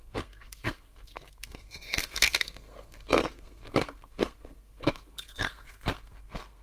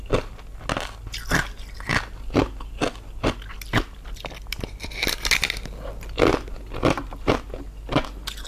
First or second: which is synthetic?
first